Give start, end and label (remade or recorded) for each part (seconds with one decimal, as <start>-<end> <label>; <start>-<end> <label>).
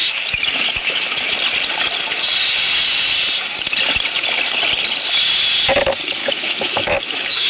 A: 0.0-1.3 remade; 1.3-6.2 recorded; 6.2-7.5 remade